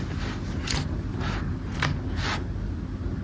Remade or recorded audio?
recorded